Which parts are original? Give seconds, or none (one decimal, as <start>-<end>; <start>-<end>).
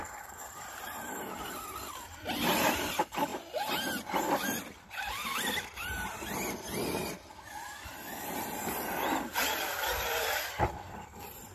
3.3-4.2